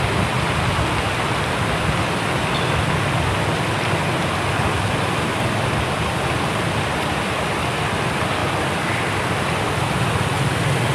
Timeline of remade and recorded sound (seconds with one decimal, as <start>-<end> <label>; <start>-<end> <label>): 0.0-8.4 recorded; 8.4-10.1 remade; 10.1-10.9 recorded